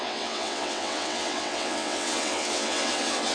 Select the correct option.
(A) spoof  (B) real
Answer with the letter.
A